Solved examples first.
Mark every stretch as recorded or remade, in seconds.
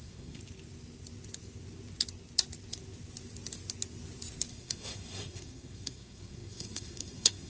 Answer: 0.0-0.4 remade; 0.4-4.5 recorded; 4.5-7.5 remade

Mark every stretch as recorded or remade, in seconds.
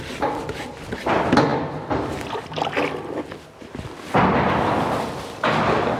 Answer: 0.0-6.0 recorded